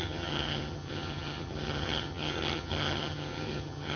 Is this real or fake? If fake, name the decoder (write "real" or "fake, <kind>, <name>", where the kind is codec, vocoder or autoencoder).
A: fake, vocoder, HiFi-GAN